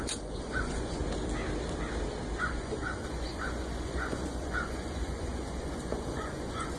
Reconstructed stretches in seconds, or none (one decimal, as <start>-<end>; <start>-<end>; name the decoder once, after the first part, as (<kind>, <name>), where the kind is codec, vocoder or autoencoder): 0.0-1.0 (vocoder, Vocos); 2.4-6.8